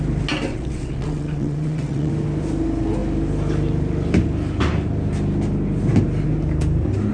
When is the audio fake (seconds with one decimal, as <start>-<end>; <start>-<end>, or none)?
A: 0.5-2.1